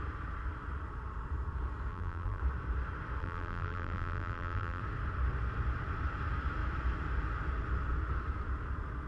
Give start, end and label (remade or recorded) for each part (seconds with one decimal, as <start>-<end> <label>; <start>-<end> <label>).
0.0-1.9 recorded; 1.9-2.4 remade; 2.4-3.2 recorded; 3.2-4.8 remade; 4.8-9.1 recorded